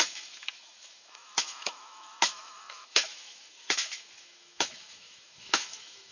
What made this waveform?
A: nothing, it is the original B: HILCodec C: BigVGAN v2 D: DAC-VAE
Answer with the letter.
D